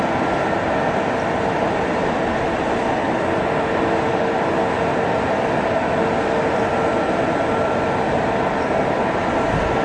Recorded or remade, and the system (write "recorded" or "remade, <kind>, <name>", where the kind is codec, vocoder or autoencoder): recorded